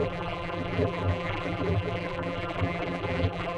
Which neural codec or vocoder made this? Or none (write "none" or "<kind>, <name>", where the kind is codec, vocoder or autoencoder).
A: vocoder, BigVGAN v2